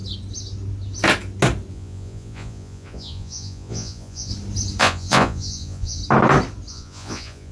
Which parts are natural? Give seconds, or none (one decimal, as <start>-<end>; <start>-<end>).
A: 0.0-1.7; 4.3-4.8; 6.0-6.7